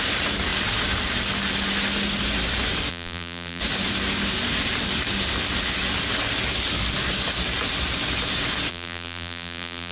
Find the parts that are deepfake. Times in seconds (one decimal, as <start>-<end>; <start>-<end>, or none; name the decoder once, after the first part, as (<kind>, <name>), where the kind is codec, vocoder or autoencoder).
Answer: 2.9-3.6 (vocoder, BigVGAN v2); 8.7-9.9